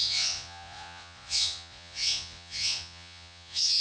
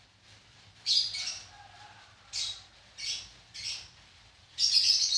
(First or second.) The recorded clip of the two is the second